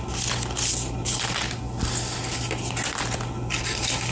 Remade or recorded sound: recorded